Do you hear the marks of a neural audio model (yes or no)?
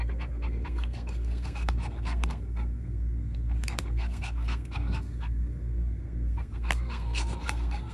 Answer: yes